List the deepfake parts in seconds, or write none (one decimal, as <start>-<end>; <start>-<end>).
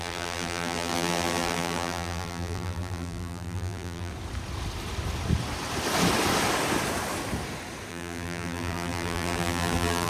0.0-4.1; 7.9-10.1